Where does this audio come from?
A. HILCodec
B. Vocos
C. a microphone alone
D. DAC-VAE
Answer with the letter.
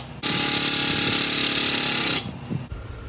C